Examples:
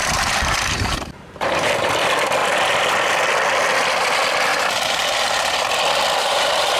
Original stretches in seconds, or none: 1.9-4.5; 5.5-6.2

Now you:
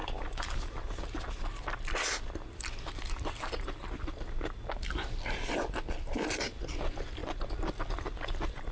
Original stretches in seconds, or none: 0.0-8.7